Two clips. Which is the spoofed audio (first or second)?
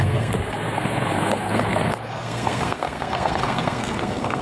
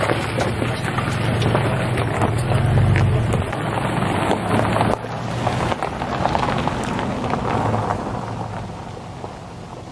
first